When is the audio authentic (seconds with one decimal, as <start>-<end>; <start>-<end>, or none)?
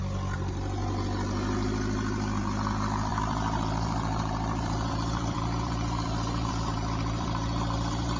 0.0-3.1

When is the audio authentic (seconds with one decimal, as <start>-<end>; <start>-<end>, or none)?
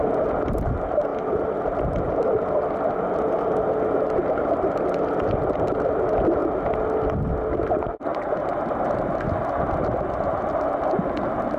0.0-11.6